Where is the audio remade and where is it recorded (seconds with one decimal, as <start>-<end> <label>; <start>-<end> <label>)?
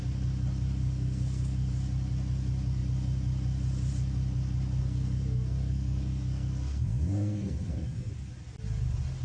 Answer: 0.0-0.8 recorded; 0.8-1.7 remade; 1.7-4.8 recorded; 4.8-8.1 remade; 8.1-9.2 recorded